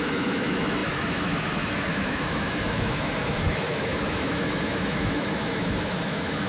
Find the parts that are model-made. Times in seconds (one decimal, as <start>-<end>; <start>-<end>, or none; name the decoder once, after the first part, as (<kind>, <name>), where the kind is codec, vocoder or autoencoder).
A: 0.0-6.5 (autoencoder, DAC-VAE)